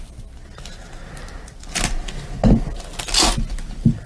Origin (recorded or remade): recorded